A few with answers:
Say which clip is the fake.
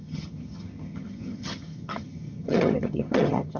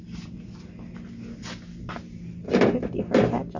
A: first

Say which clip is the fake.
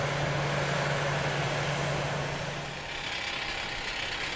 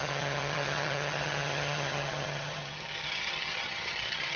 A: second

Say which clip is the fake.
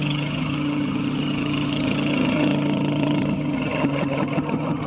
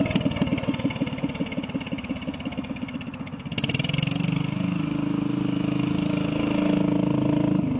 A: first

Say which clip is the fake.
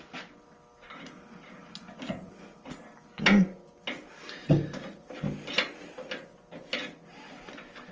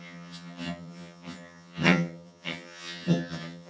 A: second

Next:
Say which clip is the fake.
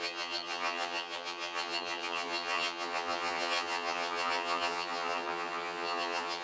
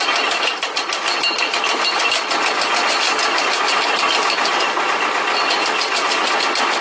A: first